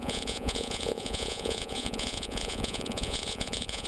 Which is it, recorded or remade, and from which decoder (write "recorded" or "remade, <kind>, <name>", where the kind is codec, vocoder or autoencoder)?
remade, vocoder, Vocos